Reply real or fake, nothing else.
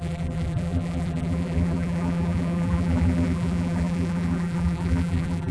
fake